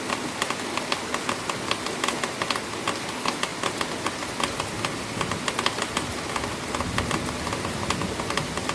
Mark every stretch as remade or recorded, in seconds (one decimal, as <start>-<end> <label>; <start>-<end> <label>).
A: 0.0-3.5 recorded; 3.5-5.2 remade; 5.2-8.7 recorded